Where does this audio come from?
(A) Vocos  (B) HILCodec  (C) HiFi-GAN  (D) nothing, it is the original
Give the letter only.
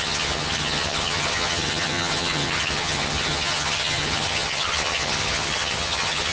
C